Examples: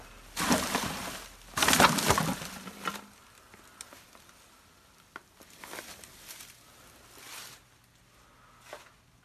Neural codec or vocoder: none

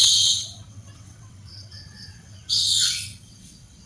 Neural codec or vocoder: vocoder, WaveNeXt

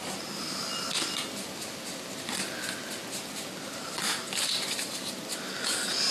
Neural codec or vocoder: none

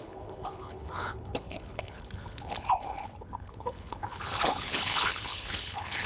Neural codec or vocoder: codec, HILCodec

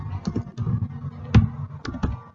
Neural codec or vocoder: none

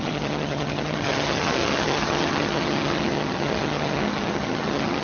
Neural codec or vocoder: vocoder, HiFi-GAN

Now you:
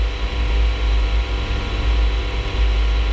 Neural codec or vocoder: none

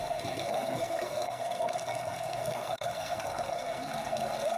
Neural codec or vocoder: codec, SNAC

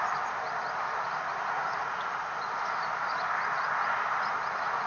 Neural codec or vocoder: none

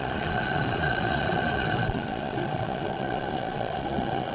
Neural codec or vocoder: vocoder, Vocos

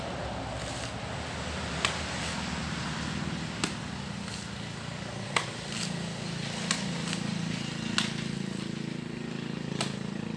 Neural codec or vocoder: none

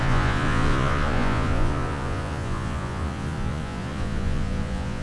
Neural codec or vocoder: vocoder, Vocos